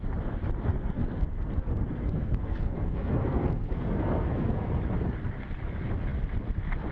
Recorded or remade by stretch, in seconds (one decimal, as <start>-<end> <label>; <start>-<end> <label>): 0.0-0.7 recorded; 0.7-4.8 remade; 4.8-6.9 recorded